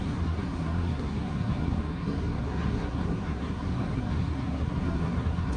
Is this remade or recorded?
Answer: remade